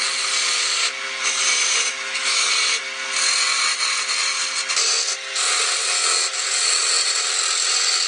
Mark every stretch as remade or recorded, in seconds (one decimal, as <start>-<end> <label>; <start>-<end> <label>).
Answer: 0.0-1.9 recorded; 1.9-2.5 remade; 2.5-8.1 recorded